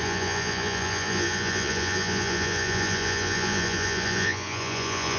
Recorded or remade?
remade